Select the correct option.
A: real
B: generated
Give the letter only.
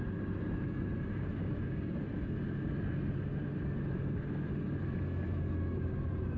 A